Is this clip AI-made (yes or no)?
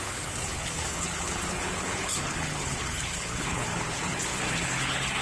yes